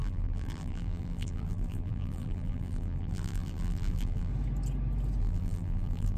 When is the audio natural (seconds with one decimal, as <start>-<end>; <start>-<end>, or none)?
4.3-5.2